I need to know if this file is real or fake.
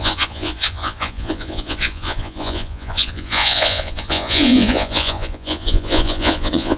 fake